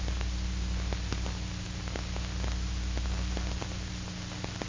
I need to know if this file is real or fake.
real